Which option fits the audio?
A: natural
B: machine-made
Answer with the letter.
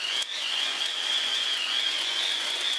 B